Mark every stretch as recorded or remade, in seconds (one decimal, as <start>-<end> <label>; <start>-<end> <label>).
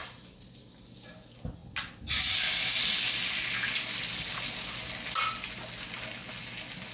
0.0-0.6 remade; 0.6-6.9 recorded